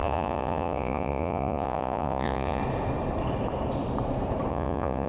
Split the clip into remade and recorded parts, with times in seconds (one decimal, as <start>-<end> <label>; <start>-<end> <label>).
0.0-2.6 remade; 2.6-4.5 recorded; 4.5-5.1 remade